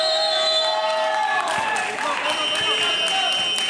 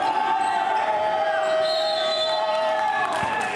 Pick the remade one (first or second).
second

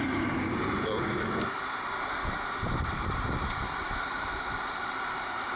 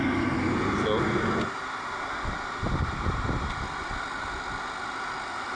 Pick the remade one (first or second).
first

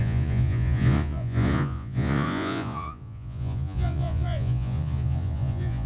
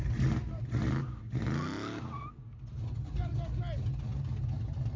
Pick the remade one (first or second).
first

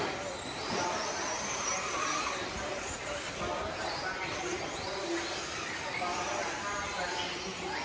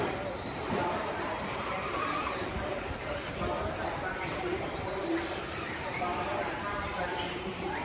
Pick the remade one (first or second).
second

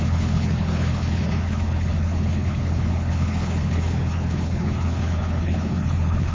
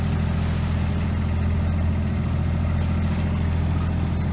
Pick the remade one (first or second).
first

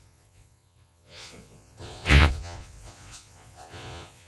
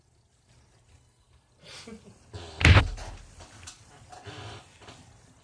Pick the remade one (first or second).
first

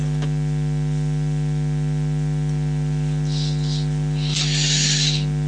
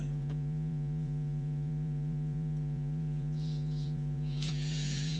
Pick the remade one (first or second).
second